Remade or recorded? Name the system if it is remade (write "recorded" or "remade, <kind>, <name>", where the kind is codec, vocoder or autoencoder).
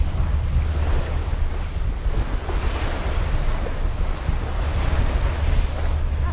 recorded